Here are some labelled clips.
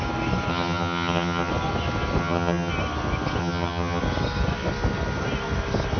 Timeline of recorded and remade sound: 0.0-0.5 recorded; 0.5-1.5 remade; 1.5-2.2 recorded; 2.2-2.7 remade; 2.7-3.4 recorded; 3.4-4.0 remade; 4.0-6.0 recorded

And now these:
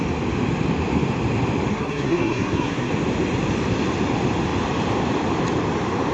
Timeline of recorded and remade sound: 0.0-1.7 recorded; 1.7-2.9 remade; 2.9-6.1 recorded